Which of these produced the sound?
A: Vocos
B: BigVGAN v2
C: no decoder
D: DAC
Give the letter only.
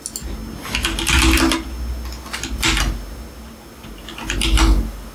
C